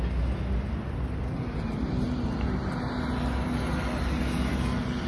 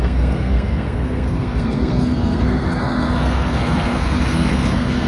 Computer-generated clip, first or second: second